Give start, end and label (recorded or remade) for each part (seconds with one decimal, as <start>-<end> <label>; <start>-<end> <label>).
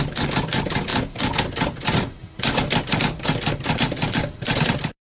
0.0-5.2 recorded